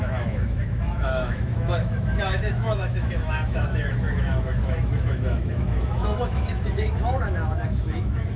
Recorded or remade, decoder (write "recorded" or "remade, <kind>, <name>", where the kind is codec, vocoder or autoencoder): remade, autoencoder, DAC-VAE